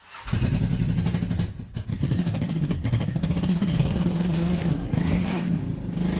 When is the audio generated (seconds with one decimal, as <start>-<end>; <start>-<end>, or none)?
1.9-5.6